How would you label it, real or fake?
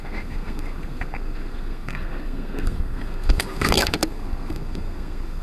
fake